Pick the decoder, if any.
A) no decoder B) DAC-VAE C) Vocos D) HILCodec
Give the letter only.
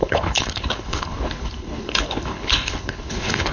D